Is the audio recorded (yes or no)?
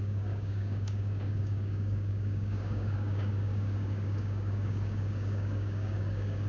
no